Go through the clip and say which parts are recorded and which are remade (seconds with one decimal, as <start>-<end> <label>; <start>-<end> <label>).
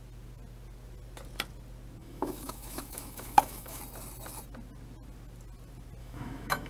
0.0-2.0 recorded; 2.0-3.8 remade; 3.8-6.0 recorded; 6.0-6.7 remade